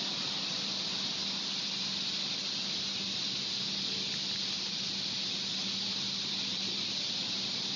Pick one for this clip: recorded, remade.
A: recorded